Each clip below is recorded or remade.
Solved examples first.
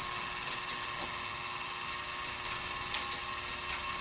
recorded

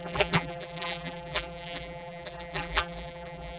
remade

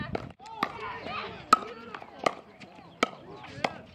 recorded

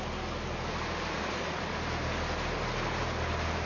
recorded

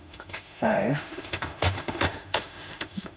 remade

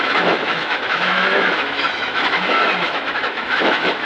remade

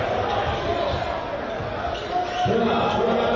recorded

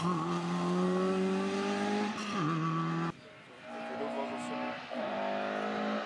recorded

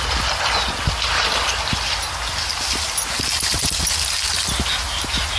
recorded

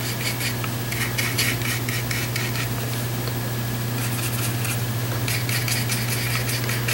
recorded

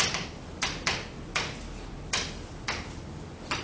recorded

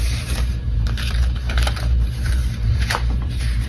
remade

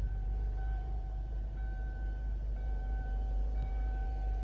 remade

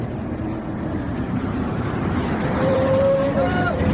remade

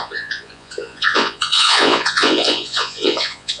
remade